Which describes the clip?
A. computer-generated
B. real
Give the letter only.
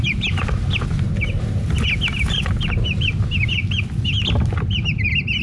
B